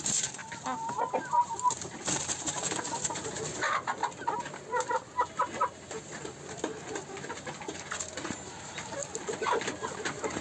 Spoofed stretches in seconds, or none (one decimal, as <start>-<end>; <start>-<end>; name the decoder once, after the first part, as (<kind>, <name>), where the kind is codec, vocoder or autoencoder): none